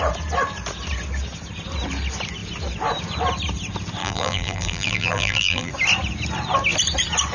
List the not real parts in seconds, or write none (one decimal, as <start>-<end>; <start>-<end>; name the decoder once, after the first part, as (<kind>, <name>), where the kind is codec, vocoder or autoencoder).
4.0-5.7 (vocoder, BigVGAN v2)